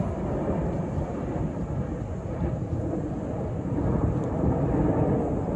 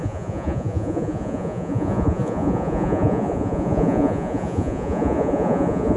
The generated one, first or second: second